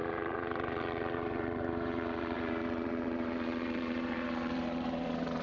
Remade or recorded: remade